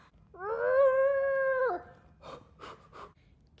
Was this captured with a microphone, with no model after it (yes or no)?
yes